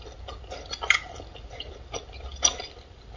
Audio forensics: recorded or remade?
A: recorded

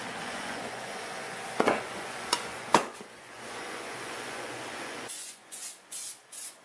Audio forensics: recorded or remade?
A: remade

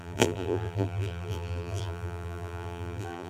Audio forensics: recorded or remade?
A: remade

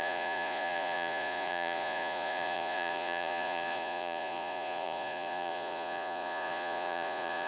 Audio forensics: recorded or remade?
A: remade